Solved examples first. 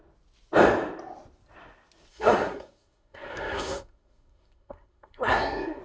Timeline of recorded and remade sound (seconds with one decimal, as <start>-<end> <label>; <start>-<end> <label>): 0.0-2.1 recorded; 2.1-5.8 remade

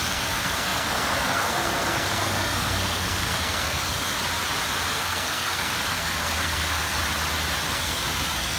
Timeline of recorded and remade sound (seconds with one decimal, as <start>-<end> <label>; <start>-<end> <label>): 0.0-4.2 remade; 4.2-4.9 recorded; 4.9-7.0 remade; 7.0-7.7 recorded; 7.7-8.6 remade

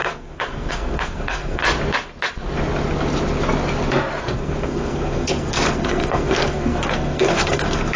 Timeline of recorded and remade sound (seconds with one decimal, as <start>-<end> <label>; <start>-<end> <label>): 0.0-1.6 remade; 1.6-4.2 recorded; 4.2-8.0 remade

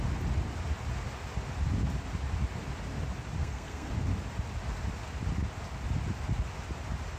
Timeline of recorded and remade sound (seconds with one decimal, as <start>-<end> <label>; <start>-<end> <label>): 0.0-3.4 recorded; 3.4-3.9 remade; 3.9-7.2 recorded